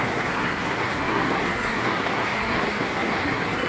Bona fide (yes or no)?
no